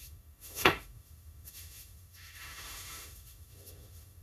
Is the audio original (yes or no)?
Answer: no